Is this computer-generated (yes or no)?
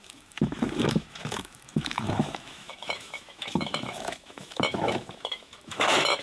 yes